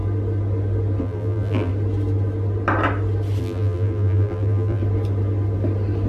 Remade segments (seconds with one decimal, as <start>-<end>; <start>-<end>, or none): 1.0-1.7; 3.4-4.8